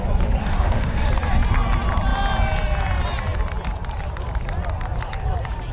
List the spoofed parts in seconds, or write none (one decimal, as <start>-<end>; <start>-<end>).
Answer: 0.4-1.1